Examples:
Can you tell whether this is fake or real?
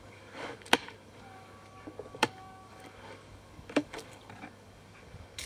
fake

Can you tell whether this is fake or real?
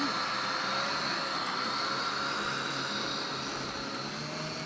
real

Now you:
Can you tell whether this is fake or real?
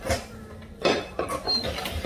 real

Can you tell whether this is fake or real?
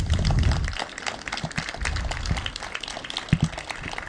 real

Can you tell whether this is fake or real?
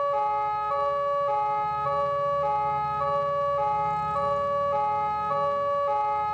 real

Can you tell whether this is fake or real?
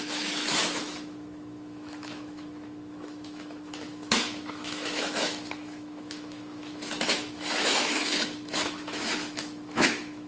fake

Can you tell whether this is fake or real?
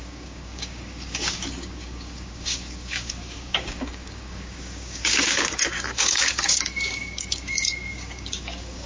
fake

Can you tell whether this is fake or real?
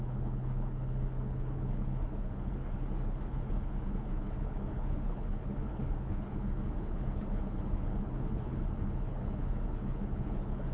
fake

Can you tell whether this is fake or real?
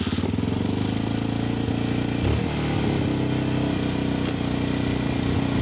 real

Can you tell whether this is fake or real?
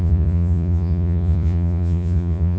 fake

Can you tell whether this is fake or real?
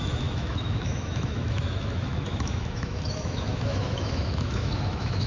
fake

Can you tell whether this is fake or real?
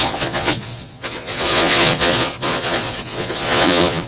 fake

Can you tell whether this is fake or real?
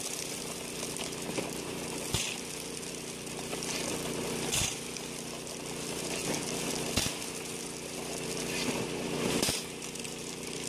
real